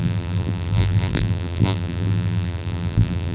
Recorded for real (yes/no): no